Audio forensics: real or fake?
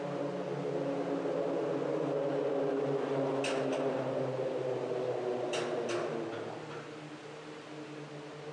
real